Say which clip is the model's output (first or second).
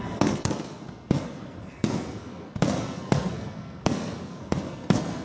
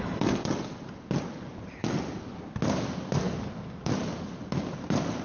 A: first